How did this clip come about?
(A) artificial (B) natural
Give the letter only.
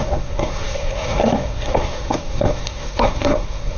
A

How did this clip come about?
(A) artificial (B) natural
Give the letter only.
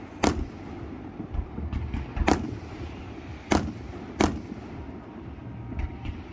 B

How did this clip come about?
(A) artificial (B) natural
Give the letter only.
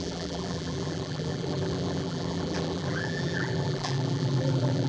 A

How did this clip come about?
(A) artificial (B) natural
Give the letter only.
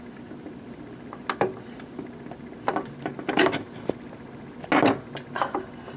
B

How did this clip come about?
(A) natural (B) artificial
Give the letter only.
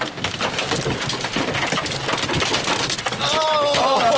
A